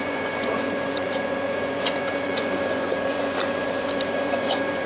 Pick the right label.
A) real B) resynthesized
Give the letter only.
B